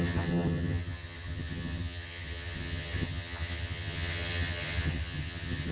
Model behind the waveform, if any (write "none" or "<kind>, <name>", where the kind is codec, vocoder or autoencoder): vocoder, HiFi-GAN